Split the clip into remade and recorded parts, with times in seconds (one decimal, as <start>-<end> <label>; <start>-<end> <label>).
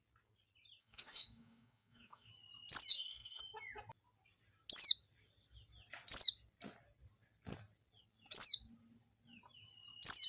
0.0-0.8 recorded; 0.8-2.3 remade; 2.3-2.9 recorded; 2.9-3.4 remade; 3.4-10.3 recorded